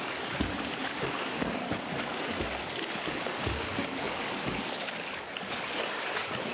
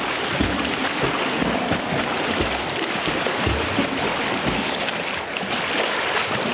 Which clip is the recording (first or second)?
second